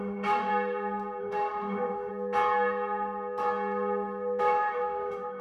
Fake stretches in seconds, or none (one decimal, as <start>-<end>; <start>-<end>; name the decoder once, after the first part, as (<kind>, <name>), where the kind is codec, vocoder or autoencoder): 0.0-0.5 (autoencoder, DAC-VAE); 1.2-2.1; 4.4-5.4